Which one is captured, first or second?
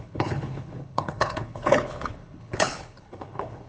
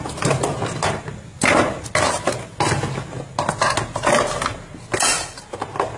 second